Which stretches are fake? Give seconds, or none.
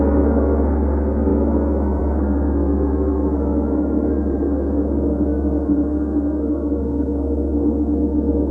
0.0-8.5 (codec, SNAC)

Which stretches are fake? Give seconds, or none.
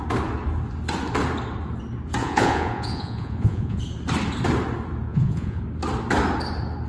2.2-3.8 (vocoder, Vocos); 5.1-5.6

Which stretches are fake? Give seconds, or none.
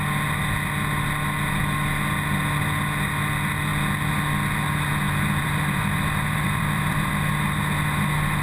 5.4-7.1 (vocoder, BigVGAN v2)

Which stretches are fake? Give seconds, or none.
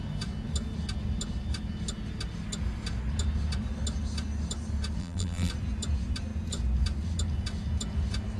5.0-5.5 (vocoder, BigVGAN v2)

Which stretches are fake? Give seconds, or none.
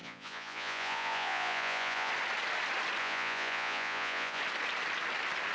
0.0-2.1 (vocoder, Vocos); 3.0-4.4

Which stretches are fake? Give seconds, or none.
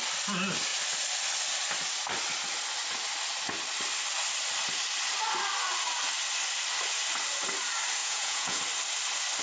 8.0-8.6 (vocoder, Vocos)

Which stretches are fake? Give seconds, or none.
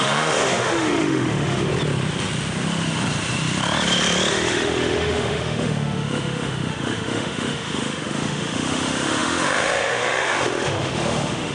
0.0-1.7 (autoencoder, DAC-VAE); 4.3-11.5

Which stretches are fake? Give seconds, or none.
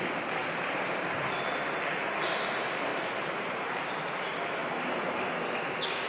0.4-2.2 (vocoder, BigVGAN v2); 2.9-3.8